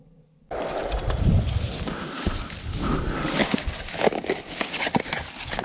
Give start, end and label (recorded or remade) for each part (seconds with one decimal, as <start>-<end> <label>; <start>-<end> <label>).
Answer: 0.0-3.4 recorded; 3.4-4.7 remade; 4.7-5.6 recorded